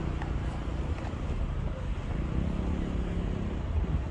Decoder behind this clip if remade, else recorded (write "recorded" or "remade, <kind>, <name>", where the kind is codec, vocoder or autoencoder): recorded